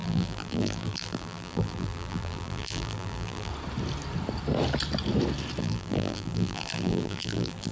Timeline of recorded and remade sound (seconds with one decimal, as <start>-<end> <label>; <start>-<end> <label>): 0.0-3.5 remade; 3.5-5.6 recorded; 5.6-7.7 remade